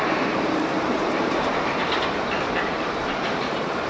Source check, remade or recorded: remade